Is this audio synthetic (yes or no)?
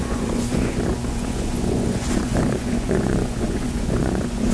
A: yes